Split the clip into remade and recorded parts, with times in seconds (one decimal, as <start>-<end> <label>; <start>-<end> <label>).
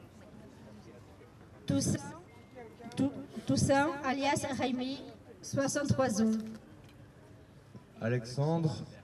0.0-9.0 recorded